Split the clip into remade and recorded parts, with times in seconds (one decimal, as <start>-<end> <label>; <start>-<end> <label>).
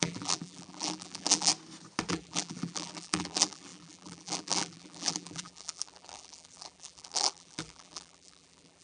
0.0-1.5 remade; 1.5-2.1 recorded; 2.1-8.8 remade